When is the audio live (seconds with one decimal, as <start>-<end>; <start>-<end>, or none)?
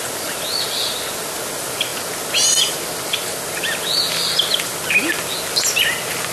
0.0-6.3